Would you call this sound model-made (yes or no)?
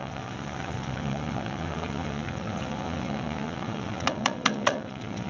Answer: yes